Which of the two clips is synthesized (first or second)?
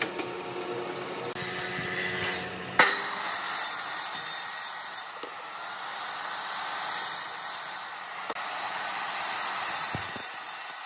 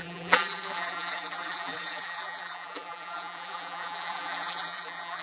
second